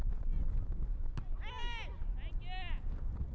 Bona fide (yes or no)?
yes